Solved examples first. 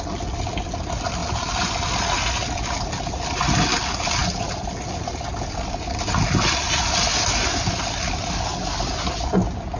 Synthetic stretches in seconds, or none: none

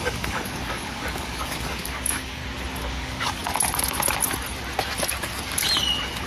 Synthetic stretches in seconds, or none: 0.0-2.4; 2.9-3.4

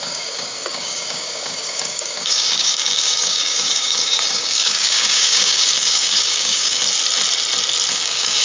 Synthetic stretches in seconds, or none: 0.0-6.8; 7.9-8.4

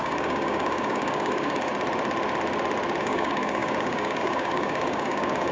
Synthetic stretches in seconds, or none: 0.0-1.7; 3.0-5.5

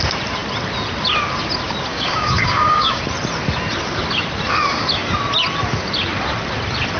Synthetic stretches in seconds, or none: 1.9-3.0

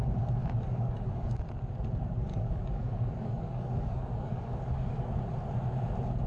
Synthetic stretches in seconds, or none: 0.4-1.4; 2.3-4.9